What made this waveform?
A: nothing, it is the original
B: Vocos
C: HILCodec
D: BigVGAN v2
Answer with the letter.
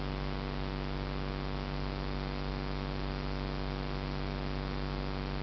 A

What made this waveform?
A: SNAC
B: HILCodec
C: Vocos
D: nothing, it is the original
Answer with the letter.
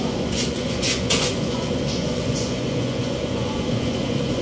C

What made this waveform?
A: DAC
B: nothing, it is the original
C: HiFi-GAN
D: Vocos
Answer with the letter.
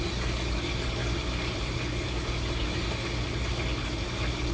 B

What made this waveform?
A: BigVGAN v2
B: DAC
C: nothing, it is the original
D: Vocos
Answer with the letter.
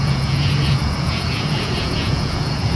D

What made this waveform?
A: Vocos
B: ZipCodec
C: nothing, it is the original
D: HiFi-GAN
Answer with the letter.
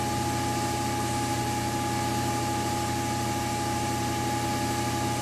C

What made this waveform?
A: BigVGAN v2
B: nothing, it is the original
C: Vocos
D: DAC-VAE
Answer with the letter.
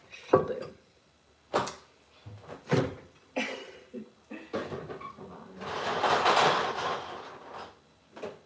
B